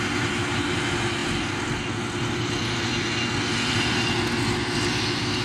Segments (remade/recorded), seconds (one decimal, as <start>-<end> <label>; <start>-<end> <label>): 0.0-5.4 recorded